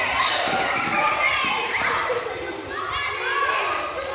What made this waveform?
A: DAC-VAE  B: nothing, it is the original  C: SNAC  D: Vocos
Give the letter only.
B